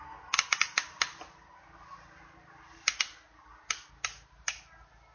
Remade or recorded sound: recorded